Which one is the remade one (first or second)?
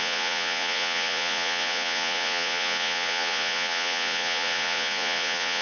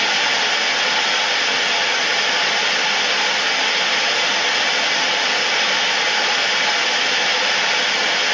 first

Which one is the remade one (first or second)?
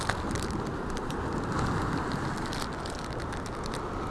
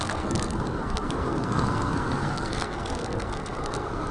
second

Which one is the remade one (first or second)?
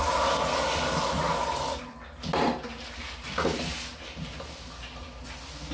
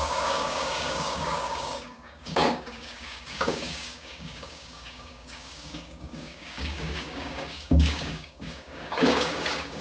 second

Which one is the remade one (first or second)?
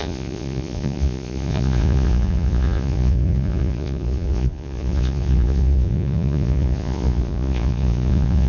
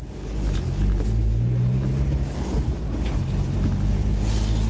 first